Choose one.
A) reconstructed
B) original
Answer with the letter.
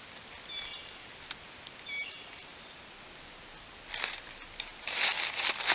B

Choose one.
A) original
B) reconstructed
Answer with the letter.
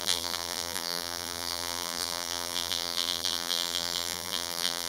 B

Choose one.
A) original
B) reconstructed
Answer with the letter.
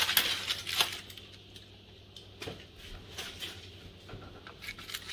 A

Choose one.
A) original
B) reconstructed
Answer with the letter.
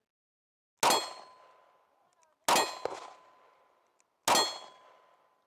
A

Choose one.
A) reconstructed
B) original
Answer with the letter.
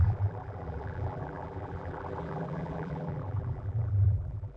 A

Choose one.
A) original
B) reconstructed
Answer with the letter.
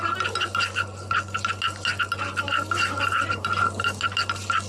A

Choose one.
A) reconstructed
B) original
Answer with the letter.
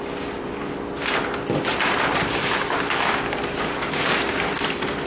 B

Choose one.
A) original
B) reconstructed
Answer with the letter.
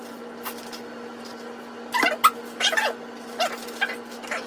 A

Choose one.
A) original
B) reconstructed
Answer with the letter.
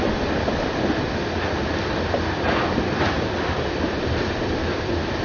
B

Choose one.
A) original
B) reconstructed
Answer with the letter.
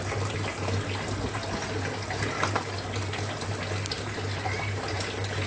A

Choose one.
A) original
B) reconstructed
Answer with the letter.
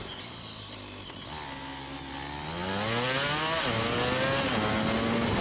A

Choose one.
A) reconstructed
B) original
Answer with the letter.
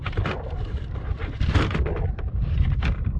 A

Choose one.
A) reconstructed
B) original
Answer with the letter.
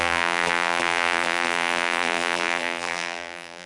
A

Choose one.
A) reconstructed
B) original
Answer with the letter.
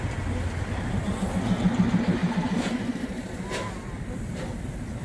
B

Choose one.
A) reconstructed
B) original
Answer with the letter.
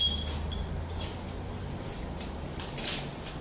B